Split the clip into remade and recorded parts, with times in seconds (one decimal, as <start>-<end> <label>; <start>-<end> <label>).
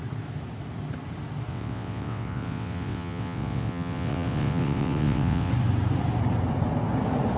0.0-1.5 recorded; 1.5-5.5 remade; 5.5-7.4 recorded